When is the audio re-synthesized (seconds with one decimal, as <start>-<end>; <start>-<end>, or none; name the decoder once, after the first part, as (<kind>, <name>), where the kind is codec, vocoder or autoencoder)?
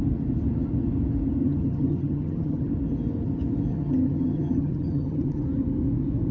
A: 1.4-2.7 (vocoder, HiFi-GAN); 3.7-5.4